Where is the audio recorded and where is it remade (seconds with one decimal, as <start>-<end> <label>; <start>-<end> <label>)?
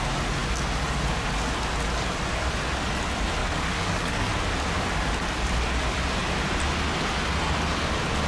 0.0-3.4 recorded; 3.4-4.3 remade; 4.3-8.3 recorded